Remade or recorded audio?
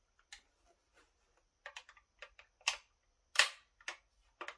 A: recorded